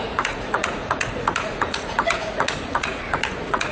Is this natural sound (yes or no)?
no